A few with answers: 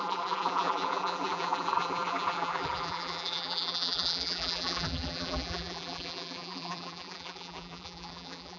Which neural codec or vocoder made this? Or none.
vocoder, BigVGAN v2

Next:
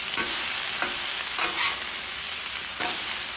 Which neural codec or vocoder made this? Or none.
none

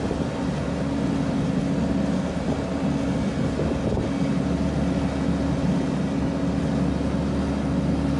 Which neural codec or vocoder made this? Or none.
none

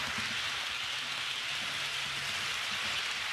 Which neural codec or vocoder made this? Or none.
none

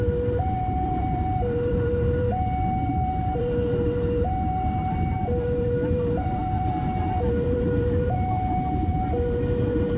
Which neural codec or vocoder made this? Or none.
vocoder, BigVGAN v2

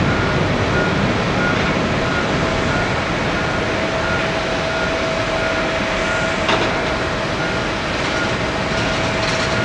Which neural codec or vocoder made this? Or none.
none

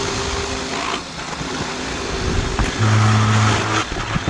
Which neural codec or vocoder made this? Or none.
none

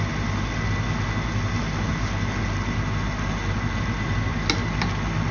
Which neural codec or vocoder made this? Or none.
none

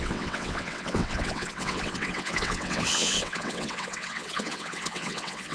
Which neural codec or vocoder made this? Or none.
vocoder, WaveNeXt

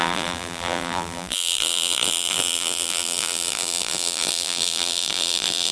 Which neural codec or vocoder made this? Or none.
vocoder, BigVGAN v2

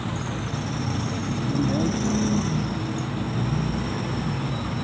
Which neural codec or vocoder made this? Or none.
none